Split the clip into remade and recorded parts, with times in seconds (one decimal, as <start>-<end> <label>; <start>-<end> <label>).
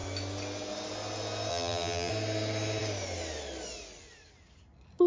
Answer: 0.0-1.5 recorded; 1.5-2.1 remade; 2.1-5.1 recorded